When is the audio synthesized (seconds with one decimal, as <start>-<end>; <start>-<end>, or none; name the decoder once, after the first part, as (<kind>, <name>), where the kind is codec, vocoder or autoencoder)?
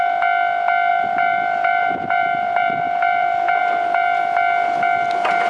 0.9-4.2 (vocoder, BigVGAN v2)